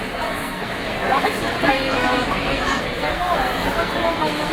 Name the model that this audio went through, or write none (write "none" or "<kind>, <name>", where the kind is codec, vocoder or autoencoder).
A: codec, SNAC